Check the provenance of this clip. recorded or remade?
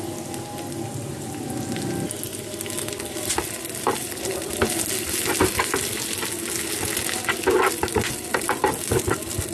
recorded